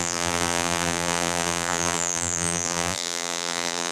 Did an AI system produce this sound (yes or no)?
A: yes